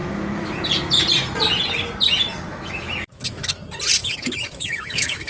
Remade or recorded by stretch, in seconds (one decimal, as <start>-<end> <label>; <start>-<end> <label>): 0.0-0.5 remade; 0.5-2.5 recorded; 2.5-3.5 remade; 3.5-4.0 recorded; 4.0-5.3 remade